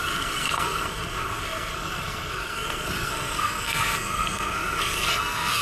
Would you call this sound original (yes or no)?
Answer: no